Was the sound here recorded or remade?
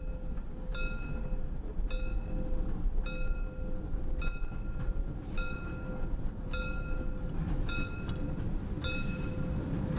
recorded